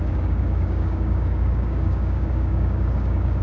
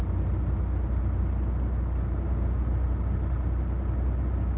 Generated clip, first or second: first